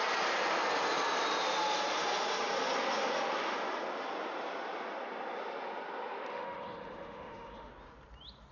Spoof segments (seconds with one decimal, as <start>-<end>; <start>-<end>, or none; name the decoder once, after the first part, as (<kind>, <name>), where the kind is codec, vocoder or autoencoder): 6.3-7.7 (autoencoder, DAC-VAE)